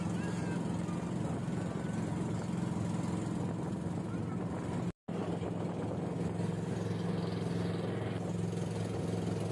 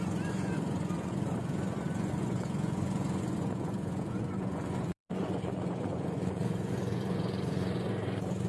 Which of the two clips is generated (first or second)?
second